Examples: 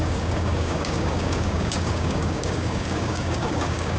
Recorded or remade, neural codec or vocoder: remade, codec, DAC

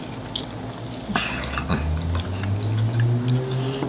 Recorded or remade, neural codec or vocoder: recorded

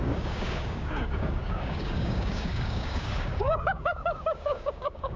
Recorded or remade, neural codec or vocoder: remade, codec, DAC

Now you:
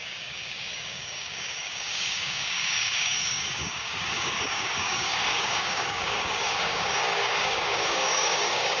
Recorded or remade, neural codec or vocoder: remade, codec, DAC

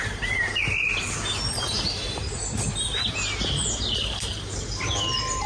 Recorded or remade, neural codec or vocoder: recorded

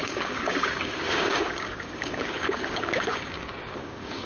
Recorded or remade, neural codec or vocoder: remade, codec, DAC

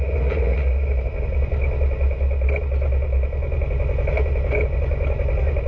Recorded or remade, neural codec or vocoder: recorded